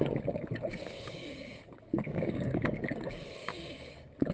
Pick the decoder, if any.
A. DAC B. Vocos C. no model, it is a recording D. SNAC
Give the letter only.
A